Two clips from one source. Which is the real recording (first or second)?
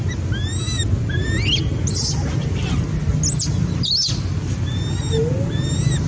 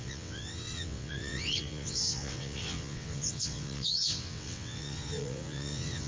first